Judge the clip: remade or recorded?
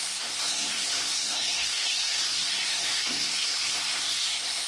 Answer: remade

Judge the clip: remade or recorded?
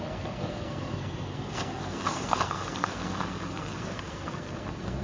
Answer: remade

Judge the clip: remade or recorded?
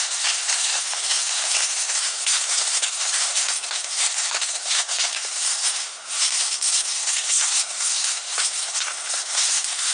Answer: remade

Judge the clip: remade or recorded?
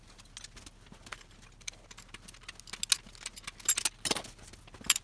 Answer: recorded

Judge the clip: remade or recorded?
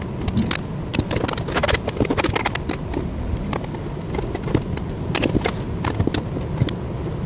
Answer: recorded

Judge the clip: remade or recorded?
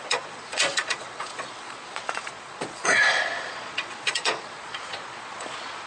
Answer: remade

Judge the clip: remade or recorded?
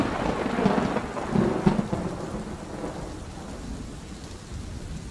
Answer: recorded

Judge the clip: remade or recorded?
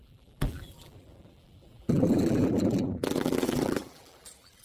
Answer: remade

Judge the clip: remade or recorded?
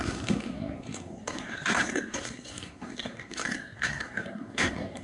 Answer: remade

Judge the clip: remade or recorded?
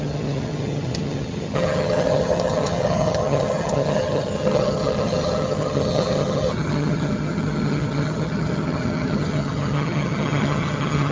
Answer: remade